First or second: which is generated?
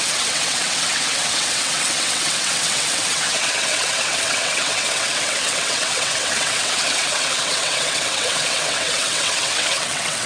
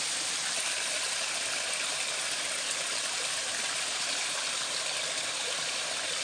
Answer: first